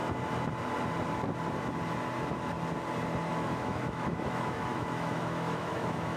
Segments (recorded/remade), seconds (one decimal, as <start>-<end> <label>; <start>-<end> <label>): 0.0-3.3 recorded; 3.3-6.2 remade